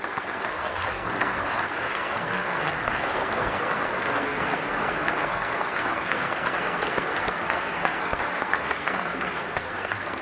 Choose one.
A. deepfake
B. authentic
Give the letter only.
A